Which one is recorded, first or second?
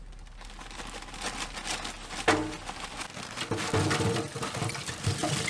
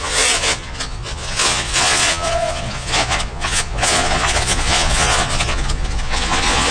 first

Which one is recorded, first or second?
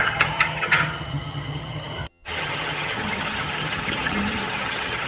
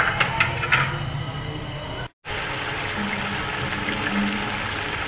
second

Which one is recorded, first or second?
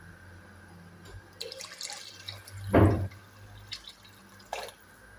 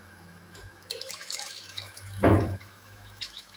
first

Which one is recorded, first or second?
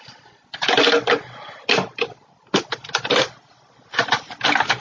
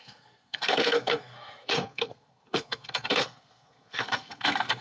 first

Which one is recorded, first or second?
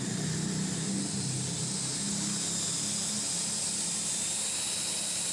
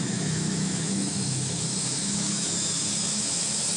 first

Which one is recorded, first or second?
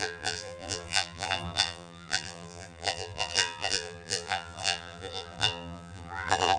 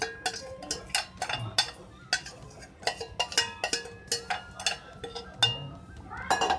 second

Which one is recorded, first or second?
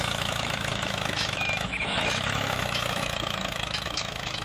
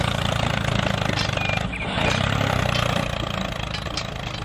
second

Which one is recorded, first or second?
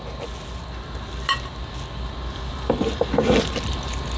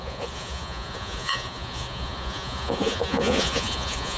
first